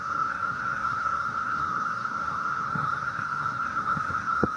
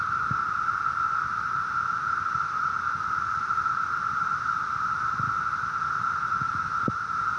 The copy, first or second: first